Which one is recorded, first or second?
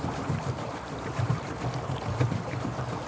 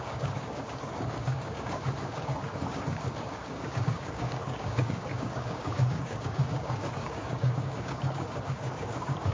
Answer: first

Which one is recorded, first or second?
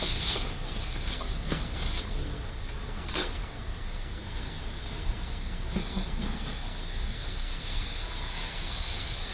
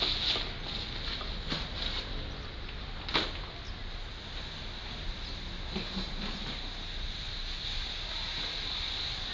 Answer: second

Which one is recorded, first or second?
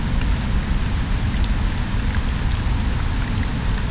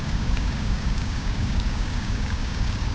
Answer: first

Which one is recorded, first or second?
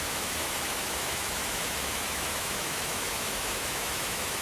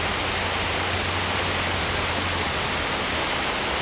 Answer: second